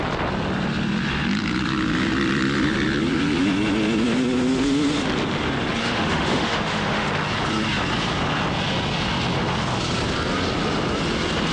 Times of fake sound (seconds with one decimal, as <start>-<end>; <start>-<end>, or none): 5.8-7.1